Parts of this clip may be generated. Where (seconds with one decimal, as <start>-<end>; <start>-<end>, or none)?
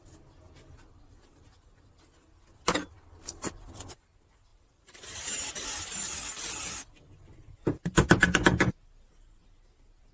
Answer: 4.5-5.5